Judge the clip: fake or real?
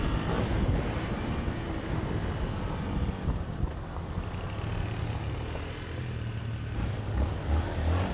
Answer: real